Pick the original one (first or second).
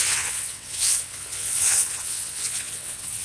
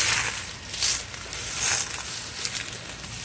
second